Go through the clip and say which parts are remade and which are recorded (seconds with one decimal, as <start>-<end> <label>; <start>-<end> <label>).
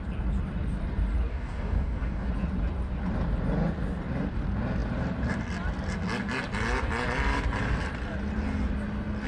0.0-1.3 recorded; 1.3-2.3 remade; 2.3-9.3 recorded